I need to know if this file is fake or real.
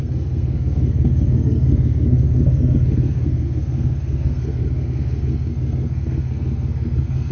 fake